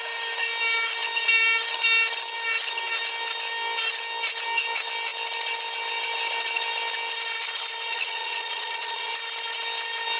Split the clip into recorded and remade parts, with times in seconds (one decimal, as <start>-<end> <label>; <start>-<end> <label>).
0.0-7.9 recorded; 7.9-9.1 remade; 9.1-10.2 recorded